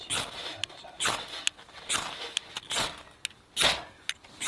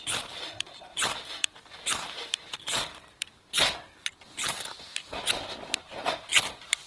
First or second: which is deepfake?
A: second